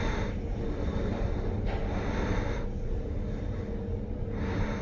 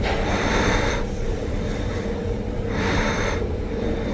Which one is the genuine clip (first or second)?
first